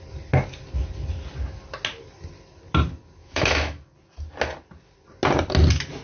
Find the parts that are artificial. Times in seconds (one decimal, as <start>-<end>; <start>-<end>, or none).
3.2-3.8